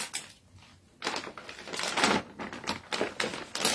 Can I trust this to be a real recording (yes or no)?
yes